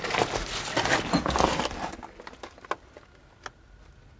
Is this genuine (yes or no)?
yes